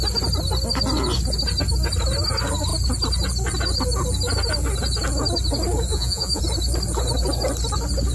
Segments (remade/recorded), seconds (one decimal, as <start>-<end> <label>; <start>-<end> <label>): 0.0-5.9 recorded; 5.9-6.4 remade; 6.4-8.1 recorded